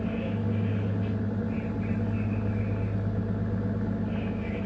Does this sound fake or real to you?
real